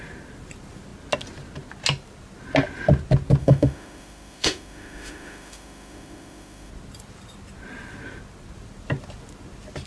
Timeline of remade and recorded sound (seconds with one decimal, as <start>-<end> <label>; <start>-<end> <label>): 0.0-3.4 recorded; 3.4-6.7 remade; 6.7-9.9 recorded